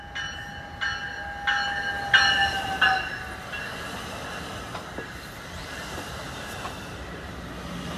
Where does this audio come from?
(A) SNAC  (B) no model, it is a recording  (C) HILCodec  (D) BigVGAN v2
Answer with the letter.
B